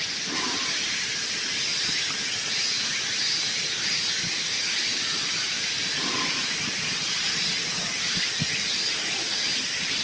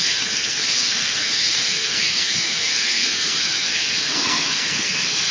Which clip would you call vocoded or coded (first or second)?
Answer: second